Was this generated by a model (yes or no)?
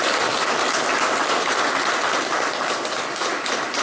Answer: no